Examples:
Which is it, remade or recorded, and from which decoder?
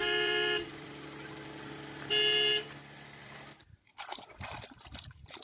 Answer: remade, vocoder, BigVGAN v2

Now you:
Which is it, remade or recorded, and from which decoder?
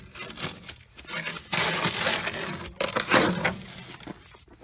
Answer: recorded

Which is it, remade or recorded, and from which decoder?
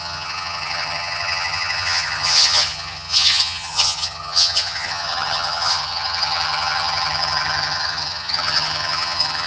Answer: remade, vocoder, HiFi-GAN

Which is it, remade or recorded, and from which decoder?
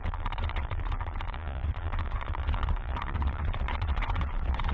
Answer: remade, vocoder, Vocos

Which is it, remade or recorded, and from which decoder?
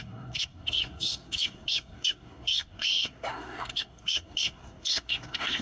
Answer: remade, codec, SNAC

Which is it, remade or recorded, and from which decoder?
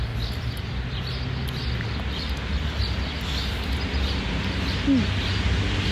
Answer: recorded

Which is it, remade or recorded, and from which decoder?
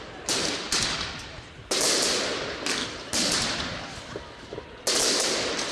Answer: recorded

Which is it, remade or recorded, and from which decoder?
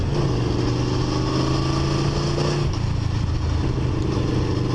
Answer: recorded